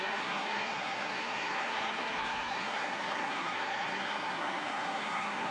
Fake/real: fake